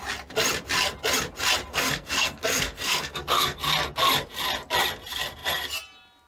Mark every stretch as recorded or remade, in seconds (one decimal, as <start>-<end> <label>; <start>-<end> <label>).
0.0-1.7 recorded; 1.7-3.6 remade; 3.6-6.3 recorded